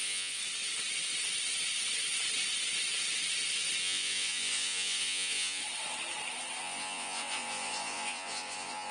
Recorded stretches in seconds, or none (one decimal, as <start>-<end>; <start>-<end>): 0.4-3.8; 5.6-6.6